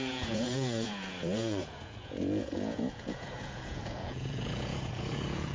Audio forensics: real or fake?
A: fake